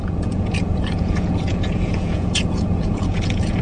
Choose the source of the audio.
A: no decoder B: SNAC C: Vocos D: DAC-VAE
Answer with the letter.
C